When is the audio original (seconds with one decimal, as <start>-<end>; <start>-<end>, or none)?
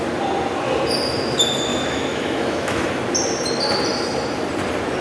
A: 0.0-1.7; 2.9-5.0